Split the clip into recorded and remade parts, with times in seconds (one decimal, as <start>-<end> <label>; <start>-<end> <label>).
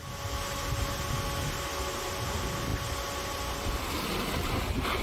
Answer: 0.0-5.0 recorded